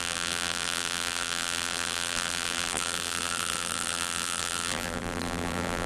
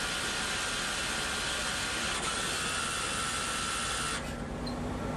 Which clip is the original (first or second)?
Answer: second